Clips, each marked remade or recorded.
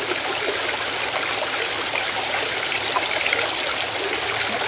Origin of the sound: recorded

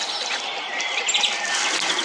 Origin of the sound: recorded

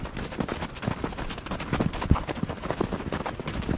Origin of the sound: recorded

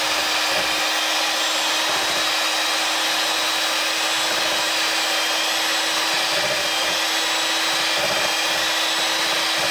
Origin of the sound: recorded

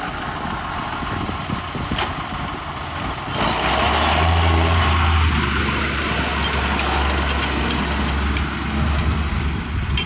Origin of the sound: recorded